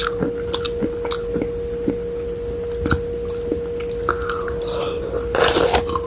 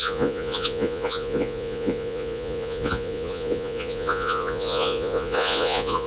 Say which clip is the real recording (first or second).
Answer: first